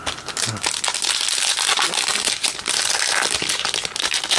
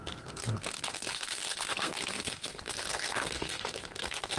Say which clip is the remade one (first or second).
second